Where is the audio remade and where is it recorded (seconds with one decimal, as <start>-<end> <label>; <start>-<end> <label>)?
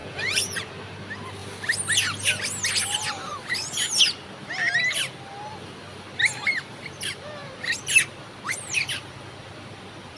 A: 0.0-0.7 remade; 0.7-10.2 recorded